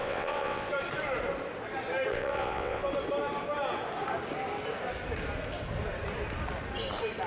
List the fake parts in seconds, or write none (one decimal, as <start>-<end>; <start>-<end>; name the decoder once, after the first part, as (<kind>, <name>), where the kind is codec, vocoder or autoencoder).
0.0-0.7 (vocoder, WaveNeXt); 2.1-2.8